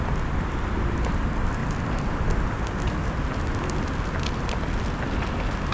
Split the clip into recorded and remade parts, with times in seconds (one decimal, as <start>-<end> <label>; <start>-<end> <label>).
0.0-5.7 recorded